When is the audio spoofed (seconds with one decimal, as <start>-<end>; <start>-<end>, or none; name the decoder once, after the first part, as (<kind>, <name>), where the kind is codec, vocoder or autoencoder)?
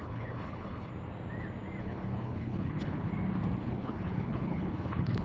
0.0-0.9 (codec, HILCodec); 1.8-3.1; 3.6-5.2